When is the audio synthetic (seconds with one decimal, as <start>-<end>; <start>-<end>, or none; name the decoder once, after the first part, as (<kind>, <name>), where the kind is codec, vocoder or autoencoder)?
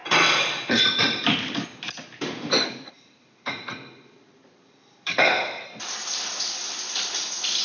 0.0-7.6 (vocoder, BigVGAN v2)